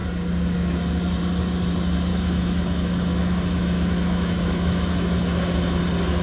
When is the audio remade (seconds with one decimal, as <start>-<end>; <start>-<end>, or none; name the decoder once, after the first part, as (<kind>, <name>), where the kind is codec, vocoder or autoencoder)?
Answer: 2.1-5.8 (autoencoder, DAC-VAE)